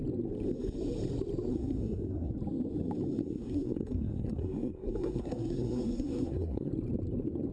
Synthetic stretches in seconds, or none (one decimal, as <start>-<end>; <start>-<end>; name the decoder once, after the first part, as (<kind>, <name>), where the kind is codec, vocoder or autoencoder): 1.5-2.3 (codec, SNAC); 3.2-6.7

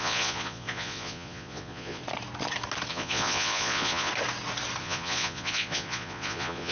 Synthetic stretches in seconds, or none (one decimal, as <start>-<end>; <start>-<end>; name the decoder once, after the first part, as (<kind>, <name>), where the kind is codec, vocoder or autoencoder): 0.0-2.0 (vocoder, Vocos); 2.9-4.1; 4.8-6.7